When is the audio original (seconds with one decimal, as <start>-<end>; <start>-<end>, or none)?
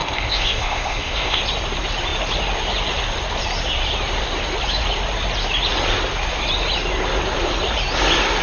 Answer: 1.4-8.4